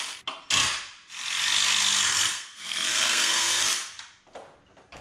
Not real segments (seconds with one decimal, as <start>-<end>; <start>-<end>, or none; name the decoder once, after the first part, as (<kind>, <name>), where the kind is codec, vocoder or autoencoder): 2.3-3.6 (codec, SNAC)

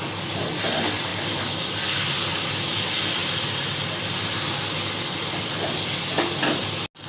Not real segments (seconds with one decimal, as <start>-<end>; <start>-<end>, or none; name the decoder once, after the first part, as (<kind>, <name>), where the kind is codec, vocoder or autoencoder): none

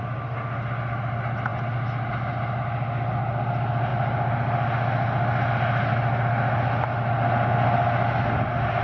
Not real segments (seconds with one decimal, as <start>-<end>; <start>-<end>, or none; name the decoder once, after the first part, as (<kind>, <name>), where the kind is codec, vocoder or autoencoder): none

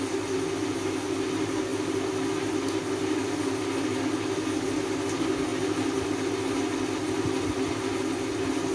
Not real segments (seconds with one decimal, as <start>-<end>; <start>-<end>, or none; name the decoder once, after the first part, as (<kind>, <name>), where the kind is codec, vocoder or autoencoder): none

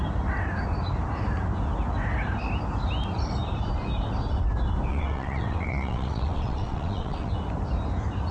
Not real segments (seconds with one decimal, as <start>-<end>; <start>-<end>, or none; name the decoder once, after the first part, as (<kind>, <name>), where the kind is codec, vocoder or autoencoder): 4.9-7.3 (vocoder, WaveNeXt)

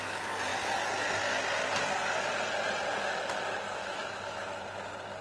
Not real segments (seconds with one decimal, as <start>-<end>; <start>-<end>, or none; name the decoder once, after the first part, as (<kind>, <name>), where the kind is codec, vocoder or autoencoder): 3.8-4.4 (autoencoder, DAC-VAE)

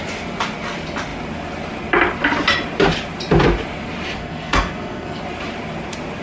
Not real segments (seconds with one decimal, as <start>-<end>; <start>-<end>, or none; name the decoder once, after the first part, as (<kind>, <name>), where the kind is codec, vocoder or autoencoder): 4.2-5.2 (codec, SNAC)

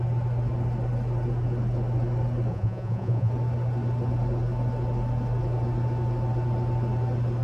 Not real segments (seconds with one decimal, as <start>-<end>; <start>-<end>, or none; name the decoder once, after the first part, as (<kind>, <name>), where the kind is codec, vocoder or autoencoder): 2.5-3.3 (vocoder, Vocos)